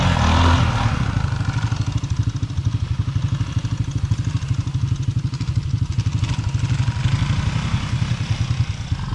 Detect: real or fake real